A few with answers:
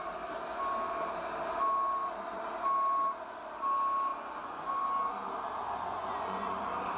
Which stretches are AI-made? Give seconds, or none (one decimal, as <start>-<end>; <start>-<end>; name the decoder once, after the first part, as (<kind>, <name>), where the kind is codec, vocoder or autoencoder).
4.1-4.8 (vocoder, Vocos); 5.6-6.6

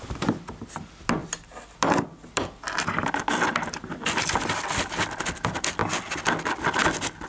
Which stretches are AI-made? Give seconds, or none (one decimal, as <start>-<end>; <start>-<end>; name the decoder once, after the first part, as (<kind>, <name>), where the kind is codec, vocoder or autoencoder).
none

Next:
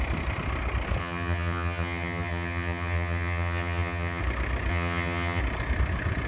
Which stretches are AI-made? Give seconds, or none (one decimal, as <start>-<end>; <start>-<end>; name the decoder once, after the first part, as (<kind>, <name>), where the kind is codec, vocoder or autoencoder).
1.0-4.2 (vocoder, HiFi-GAN); 4.7-5.4